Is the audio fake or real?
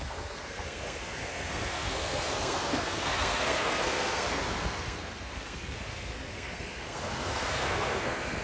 fake